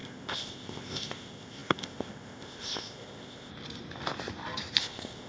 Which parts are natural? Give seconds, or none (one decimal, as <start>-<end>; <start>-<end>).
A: 3.5-4.8